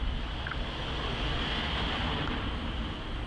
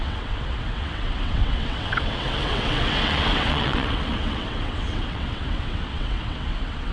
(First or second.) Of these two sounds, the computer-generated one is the second